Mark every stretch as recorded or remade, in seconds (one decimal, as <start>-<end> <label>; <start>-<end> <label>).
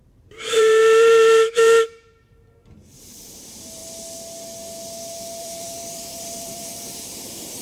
0.0-3.8 remade; 3.8-5.4 recorded; 5.4-7.6 remade